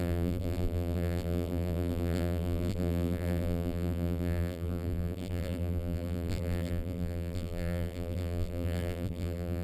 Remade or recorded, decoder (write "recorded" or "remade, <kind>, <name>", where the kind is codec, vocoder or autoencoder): remade, vocoder, BigVGAN v2